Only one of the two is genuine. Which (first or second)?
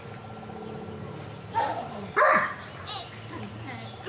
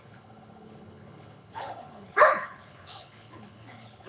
first